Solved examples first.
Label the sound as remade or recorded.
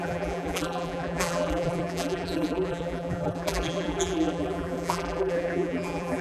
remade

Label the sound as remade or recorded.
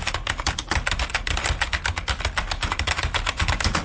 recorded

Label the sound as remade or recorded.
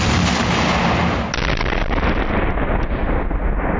recorded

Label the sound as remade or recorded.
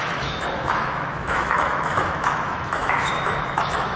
remade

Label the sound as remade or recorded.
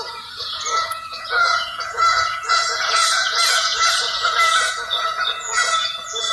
remade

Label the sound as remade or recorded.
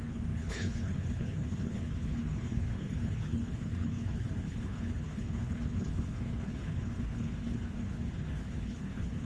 remade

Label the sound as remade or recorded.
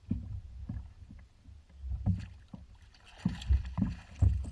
remade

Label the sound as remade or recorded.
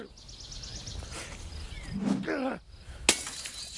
recorded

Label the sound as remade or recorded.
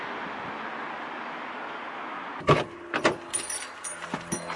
recorded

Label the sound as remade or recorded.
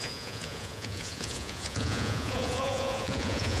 remade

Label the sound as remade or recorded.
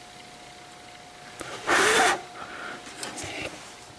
recorded